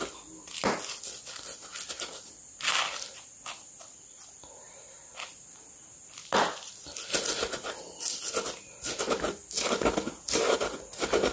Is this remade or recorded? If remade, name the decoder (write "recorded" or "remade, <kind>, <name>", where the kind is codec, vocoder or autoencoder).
recorded